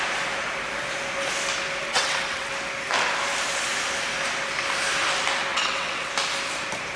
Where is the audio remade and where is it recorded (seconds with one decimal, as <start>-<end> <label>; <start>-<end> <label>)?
0.0-1.9 recorded; 1.9-2.5 remade; 2.5-5.5 recorded; 5.5-6.1 remade; 6.1-7.0 recorded

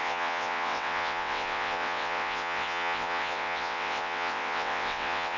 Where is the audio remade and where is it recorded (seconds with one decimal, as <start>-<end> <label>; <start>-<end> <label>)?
0.0-5.4 remade

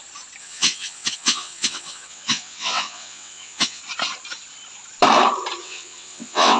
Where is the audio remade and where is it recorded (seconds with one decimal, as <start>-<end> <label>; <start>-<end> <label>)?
0.0-0.4 recorded; 0.4-3.8 remade; 3.8-5.6 recorded; 5.6-6.6 remade

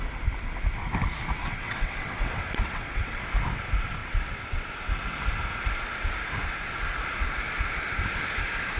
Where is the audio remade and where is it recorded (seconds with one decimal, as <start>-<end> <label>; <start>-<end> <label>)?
0.0-1.4 recorded; 1.4-3.2 remade; 3.2-4.0 recorded; 4.0-4.7 remade; 4.7-8.8 recorded

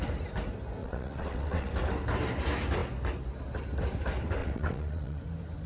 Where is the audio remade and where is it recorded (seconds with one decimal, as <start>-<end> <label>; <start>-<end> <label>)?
0.0-0.8 recorded; 0.8-1.7 remade; 1.7-4.4 recorded; 4.4-5.2 remade; 5.2-5.7 recorded

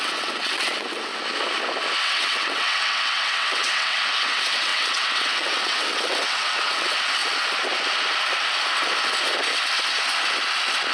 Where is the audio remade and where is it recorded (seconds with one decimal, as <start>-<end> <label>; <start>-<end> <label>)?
0.0-1.1 remade; 1.1-2.0 recorded; 2.0-7.2 remade; 7.2-10.9 recorded

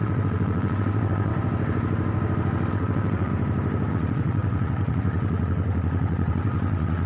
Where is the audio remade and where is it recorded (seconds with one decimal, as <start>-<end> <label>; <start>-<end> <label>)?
0.0-1.3 remade; 1.3-2.7 recorded; 2.7-3.3 remade; 3.3-3.9 recorded; 3.9-7.1 remade

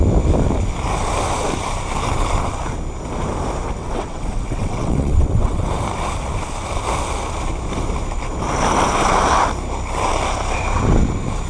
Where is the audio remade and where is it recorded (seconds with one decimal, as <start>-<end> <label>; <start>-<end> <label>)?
0.0-3.8 recorded; 3.8-5.7 remade; 5.7-11.5 recorded